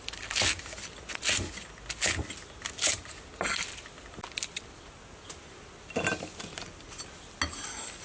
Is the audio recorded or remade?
recorded